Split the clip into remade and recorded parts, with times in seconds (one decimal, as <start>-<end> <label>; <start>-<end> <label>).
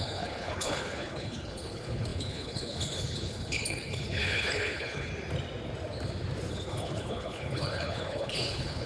0.0-5.1 remade; 5.1-6.5 recorded; 6.5-8.9 remade